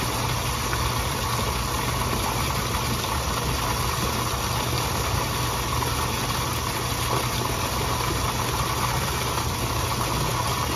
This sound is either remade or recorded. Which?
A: recorded